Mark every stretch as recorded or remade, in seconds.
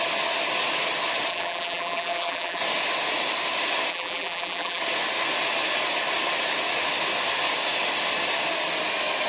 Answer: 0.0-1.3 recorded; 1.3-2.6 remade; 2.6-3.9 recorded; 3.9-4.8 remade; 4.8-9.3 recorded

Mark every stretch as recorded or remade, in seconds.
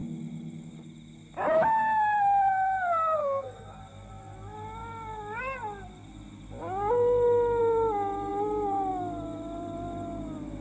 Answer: 0.0-3.2 recorded; 3.2-3.8 remade; 3.8-10.6 recorded